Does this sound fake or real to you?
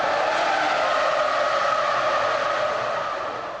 real